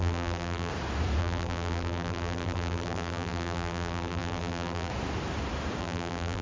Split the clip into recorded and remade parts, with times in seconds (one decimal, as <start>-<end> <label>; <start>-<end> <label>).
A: 0.0-0.7 remade; 0.7-1.2 recorded; 1.2-4.9 remade; 4.9-5.8 recorded; 5.8-6.4 remade